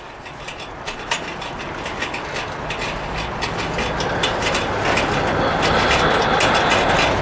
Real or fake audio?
real